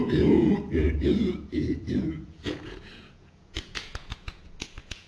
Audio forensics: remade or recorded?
remade